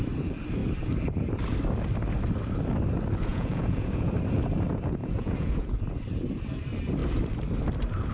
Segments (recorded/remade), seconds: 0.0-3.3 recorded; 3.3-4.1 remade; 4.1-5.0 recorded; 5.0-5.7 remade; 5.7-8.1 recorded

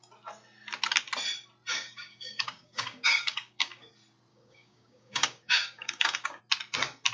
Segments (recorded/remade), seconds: 0.0-1.7 recorded; 1.7-3.9 remade; 3.9-4.3 recorded; 4.3-6.4 remade; 6.4-7.1 recorded

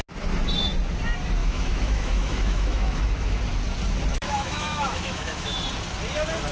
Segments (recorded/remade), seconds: 0.0-1.4 recorded; 1.4-3.4 remade; 3.4-4.1 recorded; 4.1-5.6 remade; 5.6-6.5 recorded

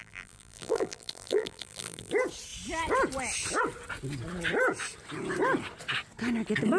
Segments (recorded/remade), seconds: 0.0-2.1 remade; 2.1-6.8 recorded

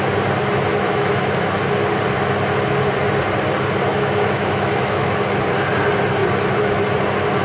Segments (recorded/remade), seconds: 0.0-0.7 recorded; 0.7-1.6 remade; 1.6-3.9 recorded; 3.9-5.1 remade; 5.1-7.4 recorded

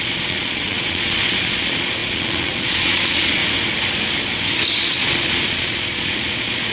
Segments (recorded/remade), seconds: 0.0-3.4 remade; 3.4-4.8 recorded; 4.8-6.7 remade

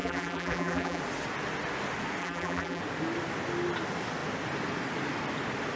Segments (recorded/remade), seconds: 0.0-1.0 remade; 1.0-2.2 recorded; 2.2-2.8 remade; 2.8-5.8 recorded